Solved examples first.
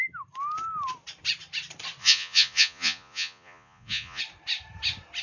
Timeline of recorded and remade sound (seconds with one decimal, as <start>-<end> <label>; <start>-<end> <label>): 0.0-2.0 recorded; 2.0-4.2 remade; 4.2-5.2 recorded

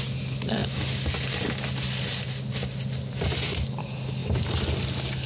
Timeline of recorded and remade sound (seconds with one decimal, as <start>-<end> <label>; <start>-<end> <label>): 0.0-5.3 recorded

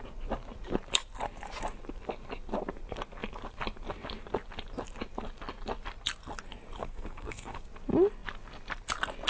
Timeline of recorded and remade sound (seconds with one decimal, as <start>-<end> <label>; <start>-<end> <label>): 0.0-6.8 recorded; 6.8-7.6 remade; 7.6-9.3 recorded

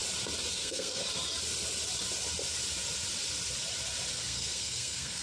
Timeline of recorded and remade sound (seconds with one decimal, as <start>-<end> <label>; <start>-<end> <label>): 0.0-0.5 recorded; 0.5-1.0 remade; 1.0-4.1 recorded; 4.1-5.2 remade